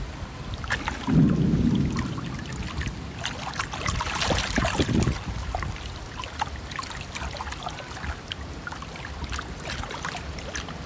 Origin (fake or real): real